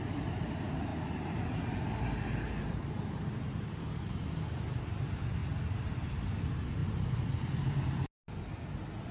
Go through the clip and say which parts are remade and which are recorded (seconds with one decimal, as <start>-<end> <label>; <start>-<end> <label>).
0.0-9.1 recorded